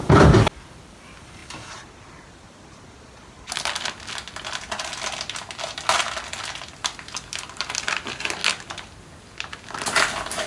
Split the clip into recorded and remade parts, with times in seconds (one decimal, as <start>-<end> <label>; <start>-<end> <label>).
0.0-1.4 remade; 1.4-6.6 recorded; 6.6-8.4 remade; 8.4-9.1 recorded; 9.1-10.5 remade